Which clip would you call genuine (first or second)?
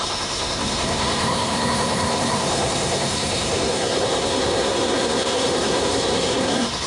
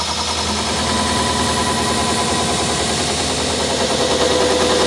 second